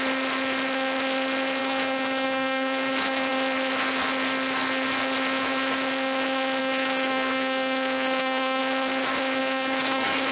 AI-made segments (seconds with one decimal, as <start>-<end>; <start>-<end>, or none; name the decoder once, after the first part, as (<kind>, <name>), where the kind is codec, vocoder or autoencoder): 1.6-3.3 (codec, DAC); 6.6-8.6; 9.4-10.3